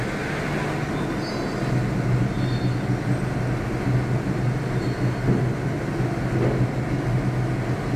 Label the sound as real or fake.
real